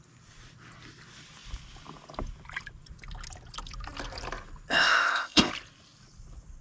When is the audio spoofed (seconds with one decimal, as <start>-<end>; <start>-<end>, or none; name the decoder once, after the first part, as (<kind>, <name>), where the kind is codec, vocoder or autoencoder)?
4.7-5.5 (codec, ZipCodec)